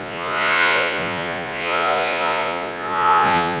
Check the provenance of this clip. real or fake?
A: fake